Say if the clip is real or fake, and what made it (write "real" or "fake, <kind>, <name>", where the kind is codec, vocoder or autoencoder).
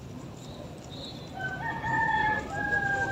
real